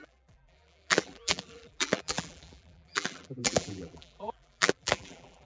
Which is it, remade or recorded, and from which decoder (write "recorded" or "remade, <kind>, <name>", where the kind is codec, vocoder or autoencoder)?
remade, vocoder, BigVGAN v2